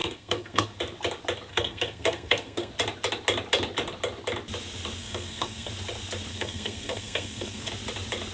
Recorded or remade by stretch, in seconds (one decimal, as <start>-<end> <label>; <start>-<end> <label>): 0.0-0.8 remade; 0.8-1.5 recorded; 1.5-2.7 remade; 2.7-5.0 recorded; 5.0-5.7 remade; 5.7-6.3 recorded; 6.3-7.7 remade; 7.7-8.3 recorded